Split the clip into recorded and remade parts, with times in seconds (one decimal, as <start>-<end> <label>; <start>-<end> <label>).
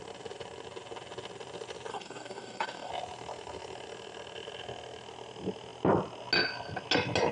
0.0-1.9 recorded; 1.9-2.9 remade; 2.9-7.3 recorded